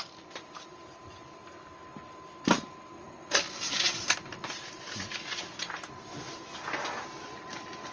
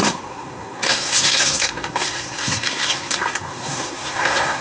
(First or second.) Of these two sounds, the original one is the first